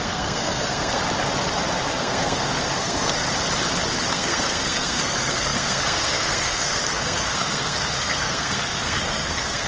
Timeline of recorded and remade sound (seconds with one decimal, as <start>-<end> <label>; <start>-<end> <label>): 0.0-1.0 remade; 1.0-2.0 recorded; 2.0-3.2 remade; 3.2-4.1 recorded; 4.1-9.7 remade